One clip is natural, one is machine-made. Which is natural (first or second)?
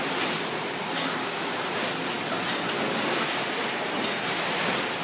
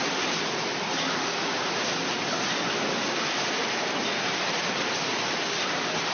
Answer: first